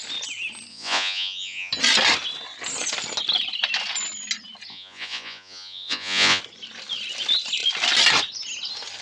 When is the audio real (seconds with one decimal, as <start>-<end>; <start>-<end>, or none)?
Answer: 0.0-0.7; 1.7-4.7; 6.4-9.0